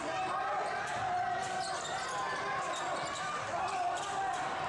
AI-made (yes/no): no